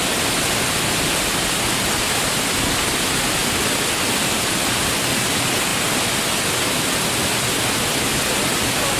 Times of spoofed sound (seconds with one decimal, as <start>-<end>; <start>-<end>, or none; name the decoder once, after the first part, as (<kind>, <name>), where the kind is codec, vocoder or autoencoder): none